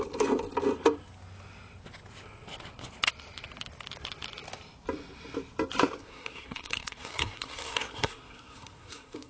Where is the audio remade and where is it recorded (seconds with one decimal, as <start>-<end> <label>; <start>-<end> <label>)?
0.0-6.0 recorded; 6.0-9.3 remade